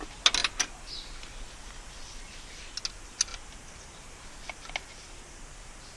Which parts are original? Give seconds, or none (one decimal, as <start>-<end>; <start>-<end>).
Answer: 0.0-6.0